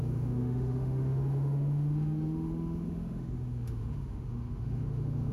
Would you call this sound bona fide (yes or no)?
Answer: no